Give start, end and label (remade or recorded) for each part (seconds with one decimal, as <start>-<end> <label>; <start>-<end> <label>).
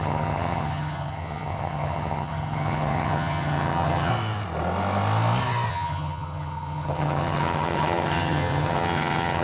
0.0-4.1 remade; 4.1-5.7 recorded; 5.7-9.4 remade